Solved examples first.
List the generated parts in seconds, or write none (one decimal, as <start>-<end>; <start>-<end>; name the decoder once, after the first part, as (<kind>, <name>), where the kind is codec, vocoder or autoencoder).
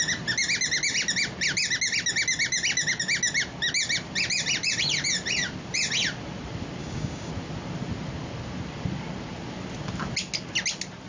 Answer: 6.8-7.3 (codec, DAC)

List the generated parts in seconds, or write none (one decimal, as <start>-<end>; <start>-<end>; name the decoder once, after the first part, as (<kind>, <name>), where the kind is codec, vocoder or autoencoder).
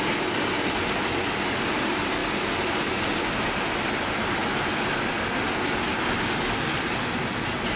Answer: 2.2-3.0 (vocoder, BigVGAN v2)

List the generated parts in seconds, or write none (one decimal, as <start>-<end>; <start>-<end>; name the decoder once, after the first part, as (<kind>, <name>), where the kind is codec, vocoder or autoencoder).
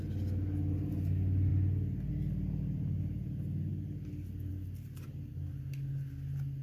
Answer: none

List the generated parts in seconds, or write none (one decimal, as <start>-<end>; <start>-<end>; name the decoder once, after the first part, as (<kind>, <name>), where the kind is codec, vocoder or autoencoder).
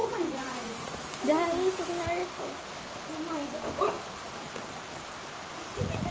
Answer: 0.0-1.0 (vocoder, Vocos)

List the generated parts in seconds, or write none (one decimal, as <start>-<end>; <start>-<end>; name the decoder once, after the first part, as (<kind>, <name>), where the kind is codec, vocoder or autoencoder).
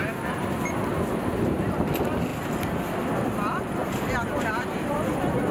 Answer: none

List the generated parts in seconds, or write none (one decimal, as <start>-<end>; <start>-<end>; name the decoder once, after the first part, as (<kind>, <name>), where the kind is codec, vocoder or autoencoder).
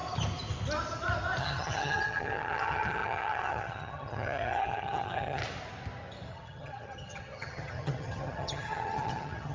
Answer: 1.4-5.4 (vocoder, HiFi-GAN); 6.3-9.5